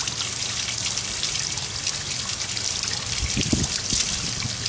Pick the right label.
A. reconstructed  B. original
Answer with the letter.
B